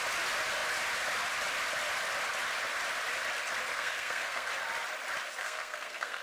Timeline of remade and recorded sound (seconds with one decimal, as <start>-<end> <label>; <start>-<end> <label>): 0.0-3.7 recorded; 3.7-4.5 remade; 4.5-5.4 recorded; 5.4-6.2 remade